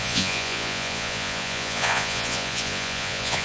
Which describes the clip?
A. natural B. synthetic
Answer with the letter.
B